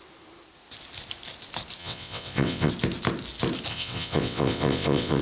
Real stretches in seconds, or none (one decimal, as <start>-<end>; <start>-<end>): 0.0-1.8; 2.7-3.7

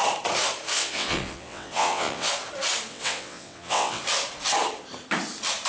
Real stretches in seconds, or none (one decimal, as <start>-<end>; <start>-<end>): 0.0-0.7; 2.3-2.9; 4.0-5.7